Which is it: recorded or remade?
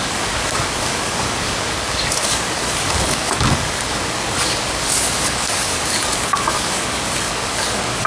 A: remade